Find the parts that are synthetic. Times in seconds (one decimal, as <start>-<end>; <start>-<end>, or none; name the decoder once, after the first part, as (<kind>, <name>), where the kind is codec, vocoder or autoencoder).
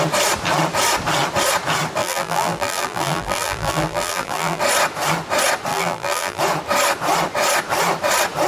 2.0-4.6 (vocoder, BigVGAN v2); 5.7-6.4